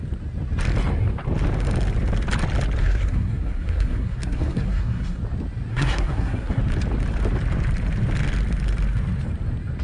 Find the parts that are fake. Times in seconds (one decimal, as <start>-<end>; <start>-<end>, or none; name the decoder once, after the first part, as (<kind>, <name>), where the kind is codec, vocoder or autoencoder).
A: 2.8-5.2 (codec, SNAC); 5.7-6.6